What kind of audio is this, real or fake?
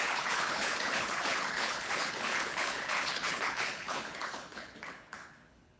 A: fake